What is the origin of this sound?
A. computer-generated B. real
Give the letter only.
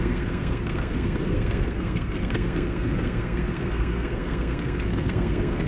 A